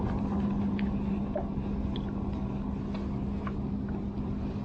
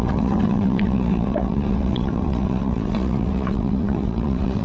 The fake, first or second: second